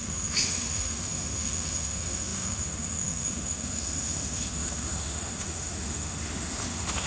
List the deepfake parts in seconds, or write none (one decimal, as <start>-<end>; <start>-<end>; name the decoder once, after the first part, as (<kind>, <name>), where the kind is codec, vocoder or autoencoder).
0.0-7.1 (autoencoder, DAC-VAE)